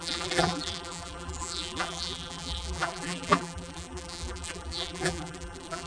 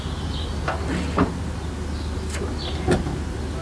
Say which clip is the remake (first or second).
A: first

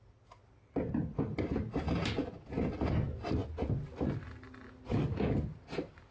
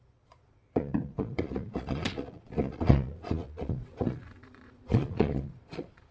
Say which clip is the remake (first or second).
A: second